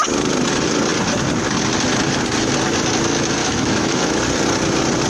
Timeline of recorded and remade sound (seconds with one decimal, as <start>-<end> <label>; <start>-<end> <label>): 0.0-3.4 recorded; 3.4-4.2 remade; 4.2-5.1 recorded